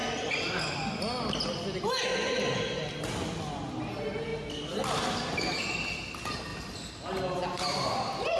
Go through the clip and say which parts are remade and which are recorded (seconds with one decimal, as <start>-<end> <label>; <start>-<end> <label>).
0.0-8.4 recorded